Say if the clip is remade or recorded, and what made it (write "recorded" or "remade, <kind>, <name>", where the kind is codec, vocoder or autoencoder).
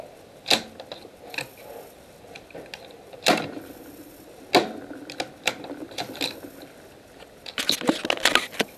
recorded